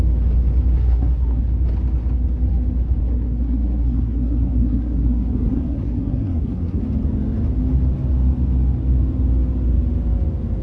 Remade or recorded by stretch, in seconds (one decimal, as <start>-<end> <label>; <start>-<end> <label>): 0.0-0.8 recorded; 0.8-1.4 remade; 1.4-3.0 recorded; 3.0-6.8 remade; 6.8-10.6 recorded